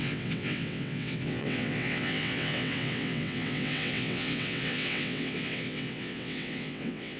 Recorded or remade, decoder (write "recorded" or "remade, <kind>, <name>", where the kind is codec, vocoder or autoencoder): remade, vocoder, WaveNeXt